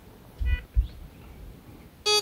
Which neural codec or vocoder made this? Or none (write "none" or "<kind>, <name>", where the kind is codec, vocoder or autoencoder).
none